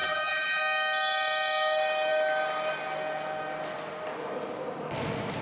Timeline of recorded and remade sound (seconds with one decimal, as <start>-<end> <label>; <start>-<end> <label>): 0.0-0.6 remade; 0.6-5.4 recorded